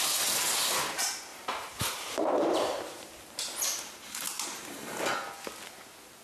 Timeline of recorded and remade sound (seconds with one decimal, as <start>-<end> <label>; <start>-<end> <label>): 0.0-1.3 recorded; 1.3-5.0 remade; 5.0-6.2 recorded